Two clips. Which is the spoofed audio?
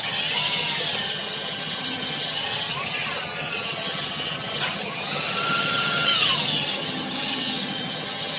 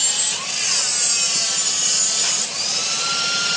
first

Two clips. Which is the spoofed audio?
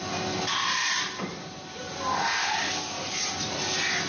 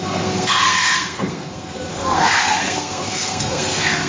second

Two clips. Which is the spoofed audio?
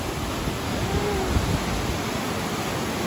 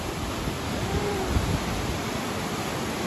second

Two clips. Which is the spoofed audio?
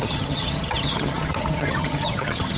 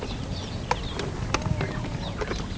first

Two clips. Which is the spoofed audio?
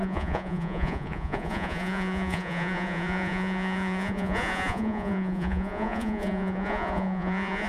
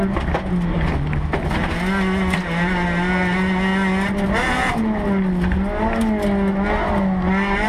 first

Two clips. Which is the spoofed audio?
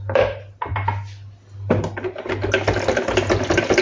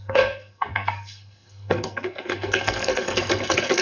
second